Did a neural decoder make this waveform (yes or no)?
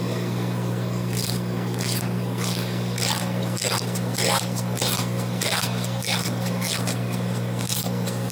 yes